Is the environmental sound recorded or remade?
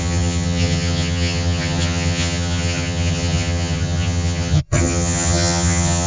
remade